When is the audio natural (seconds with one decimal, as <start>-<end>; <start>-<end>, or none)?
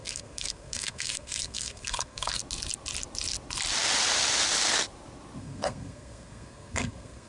2.4-5.4